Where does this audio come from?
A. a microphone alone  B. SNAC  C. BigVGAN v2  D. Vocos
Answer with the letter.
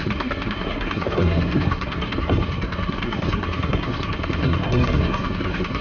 B